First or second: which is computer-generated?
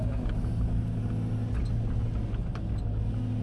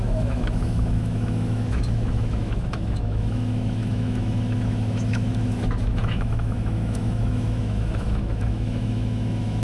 second